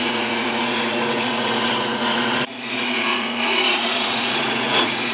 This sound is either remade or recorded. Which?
remade